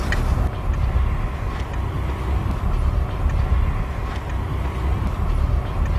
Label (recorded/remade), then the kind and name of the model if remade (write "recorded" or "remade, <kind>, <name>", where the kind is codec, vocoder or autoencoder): recorded